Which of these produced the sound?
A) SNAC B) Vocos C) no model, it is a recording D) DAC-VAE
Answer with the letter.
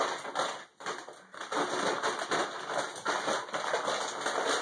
C